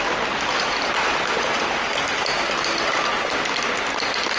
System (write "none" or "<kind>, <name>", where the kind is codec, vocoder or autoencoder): none